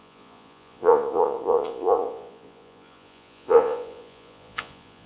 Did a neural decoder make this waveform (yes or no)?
yes